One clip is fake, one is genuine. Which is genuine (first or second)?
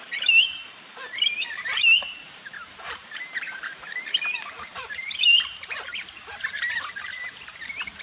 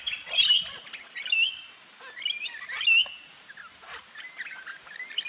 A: second